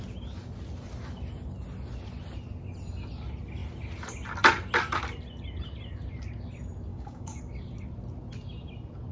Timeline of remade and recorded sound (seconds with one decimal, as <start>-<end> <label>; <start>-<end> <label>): 0.0-6.9 recorded; 6.9-7.4 remade; 7.4-9.1 recorded